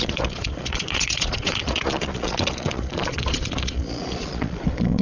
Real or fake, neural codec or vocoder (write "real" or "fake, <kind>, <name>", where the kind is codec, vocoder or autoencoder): fake, vocoder, Vocos